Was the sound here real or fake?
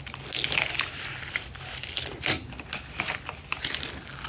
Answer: real